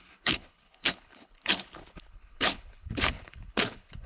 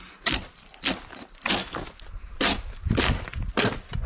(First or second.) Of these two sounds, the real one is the second